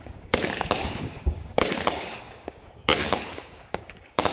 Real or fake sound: fake